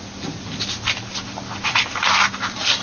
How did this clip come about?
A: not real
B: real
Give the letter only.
B